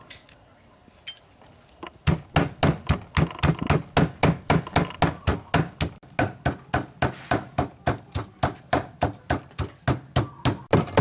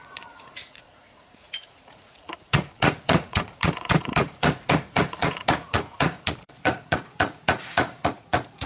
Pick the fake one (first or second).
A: second